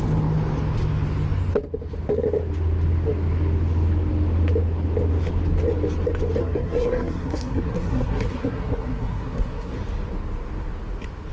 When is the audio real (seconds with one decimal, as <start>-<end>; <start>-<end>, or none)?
0.0-6.4; 9.7-11.3